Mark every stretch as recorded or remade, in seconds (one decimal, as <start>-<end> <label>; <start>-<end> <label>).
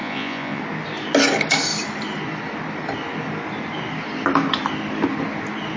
0.0-0.6 remade; 0.6-5.8 recorded